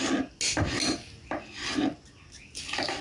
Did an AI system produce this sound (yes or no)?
no